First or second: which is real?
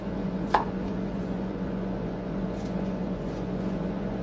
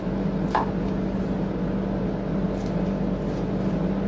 second